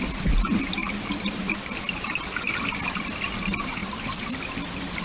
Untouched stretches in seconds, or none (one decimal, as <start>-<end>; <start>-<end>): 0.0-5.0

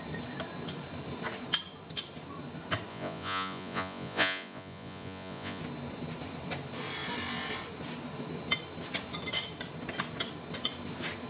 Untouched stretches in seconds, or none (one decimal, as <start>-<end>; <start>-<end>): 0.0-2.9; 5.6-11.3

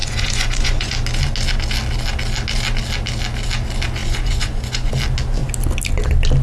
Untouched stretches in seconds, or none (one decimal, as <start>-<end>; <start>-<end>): 0.9-4.0; 4.9-6.4

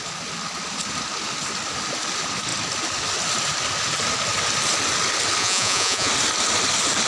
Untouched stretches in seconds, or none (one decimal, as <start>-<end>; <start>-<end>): 0.0-5.4; 6.1-7.1

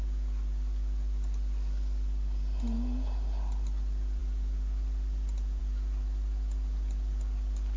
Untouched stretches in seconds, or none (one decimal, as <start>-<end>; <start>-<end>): 0.0-7.8

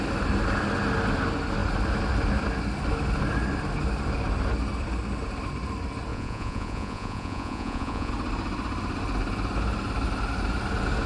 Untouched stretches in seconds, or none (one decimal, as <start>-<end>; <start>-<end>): 0.0-6.1; 8.1-11.1

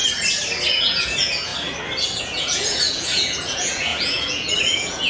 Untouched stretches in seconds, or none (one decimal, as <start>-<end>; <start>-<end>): 0.0-0.7; 1.5-2.2

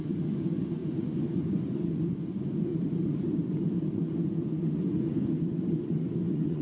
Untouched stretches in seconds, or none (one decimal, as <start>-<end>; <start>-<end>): 2.7-3.9